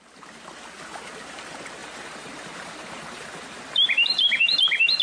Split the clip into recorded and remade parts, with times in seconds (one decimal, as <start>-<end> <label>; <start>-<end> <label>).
0.0-1.8 recorded; 1.8-5.0 remade